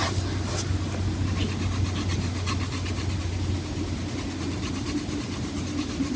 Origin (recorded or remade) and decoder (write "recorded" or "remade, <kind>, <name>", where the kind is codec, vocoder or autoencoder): recorded